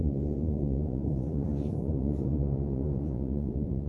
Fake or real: fake